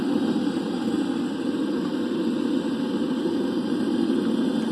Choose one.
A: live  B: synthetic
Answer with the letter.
A